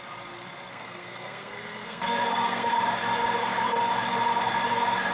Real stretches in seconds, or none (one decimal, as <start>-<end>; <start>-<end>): 0.0-0.7; 2.7-3.4; 3.9-5.1